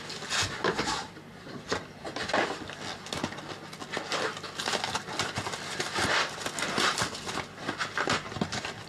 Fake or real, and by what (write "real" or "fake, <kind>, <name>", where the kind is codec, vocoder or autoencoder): real